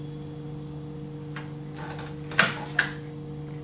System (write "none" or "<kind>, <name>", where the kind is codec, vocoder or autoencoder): none